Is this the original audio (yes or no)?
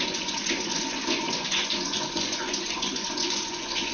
no